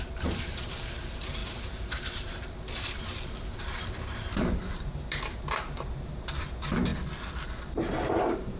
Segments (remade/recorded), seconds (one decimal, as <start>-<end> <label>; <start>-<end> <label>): 0.0-6.9 remade; 6.9-7.7 recorded; 7.7-8.6 remade